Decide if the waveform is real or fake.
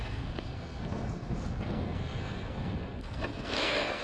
fake